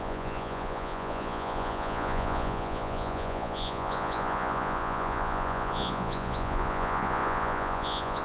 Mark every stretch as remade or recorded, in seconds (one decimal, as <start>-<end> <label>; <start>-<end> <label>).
0.0-8.2 remade